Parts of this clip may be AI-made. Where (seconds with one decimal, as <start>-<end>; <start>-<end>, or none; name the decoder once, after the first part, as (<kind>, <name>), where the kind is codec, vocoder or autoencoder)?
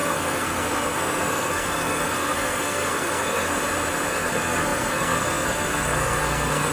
0.0-3.6 (codec, SNAC); 4.1-6.7